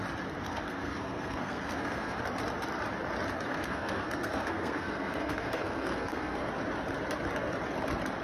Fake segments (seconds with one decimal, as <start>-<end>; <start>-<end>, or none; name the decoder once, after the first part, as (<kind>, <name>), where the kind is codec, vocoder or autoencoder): 0.4-2.2 (codec, SNAC); 3.5-6.5